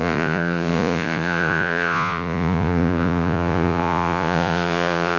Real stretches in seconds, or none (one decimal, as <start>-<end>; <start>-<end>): none